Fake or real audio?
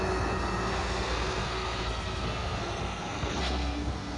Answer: fake